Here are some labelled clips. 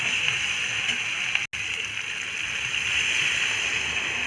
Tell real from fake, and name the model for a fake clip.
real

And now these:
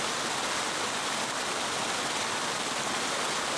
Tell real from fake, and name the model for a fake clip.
real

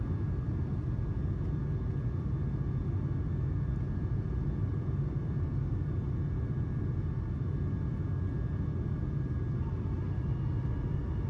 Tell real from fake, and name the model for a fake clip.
real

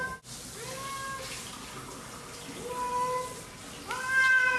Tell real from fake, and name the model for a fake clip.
real